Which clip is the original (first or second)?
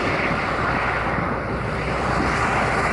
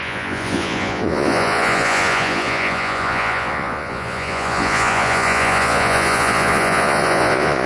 first